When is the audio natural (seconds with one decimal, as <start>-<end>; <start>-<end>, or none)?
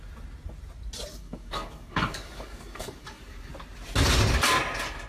0.0-1.1; 3.5-5.1